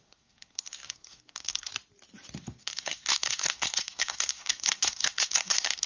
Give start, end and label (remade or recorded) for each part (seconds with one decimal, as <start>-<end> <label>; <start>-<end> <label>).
0.0-1.7 remade; 1.7-2.4 recorded; 2.4-5.9 remade